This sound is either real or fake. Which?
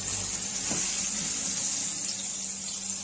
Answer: real